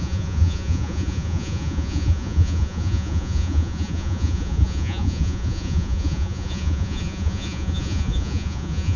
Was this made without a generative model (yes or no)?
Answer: no